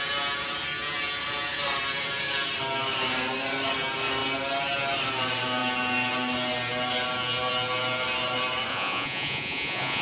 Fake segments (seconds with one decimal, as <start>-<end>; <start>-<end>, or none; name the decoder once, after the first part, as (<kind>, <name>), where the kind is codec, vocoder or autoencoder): 8.7-10.0 (vocoder, Vocos)